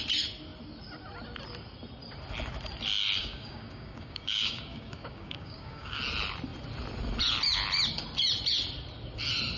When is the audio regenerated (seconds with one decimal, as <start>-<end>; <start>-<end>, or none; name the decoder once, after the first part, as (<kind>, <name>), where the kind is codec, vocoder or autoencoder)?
3.2-6.0 (codec, DAC)